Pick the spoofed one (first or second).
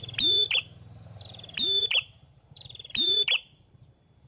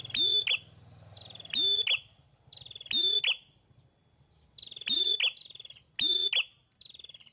first